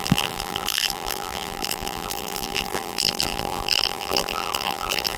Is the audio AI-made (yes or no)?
yes